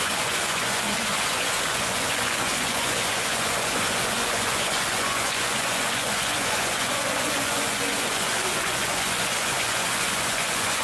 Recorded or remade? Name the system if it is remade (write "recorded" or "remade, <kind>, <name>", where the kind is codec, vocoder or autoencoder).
remade, vocoder, Vocos